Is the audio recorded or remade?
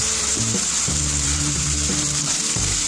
remade